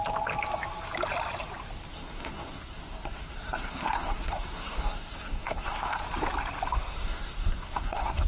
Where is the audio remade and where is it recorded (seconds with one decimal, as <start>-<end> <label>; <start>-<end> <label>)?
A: 0.0-1.9 recorded; 1.9-6.0 remade; 6.0-6.9 recorded; 6.9-8.3 remade